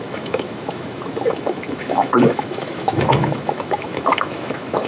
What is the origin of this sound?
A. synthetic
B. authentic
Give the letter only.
A